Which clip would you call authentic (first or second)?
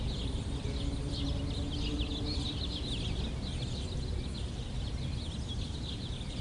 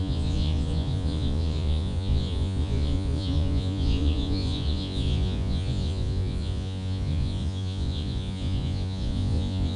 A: first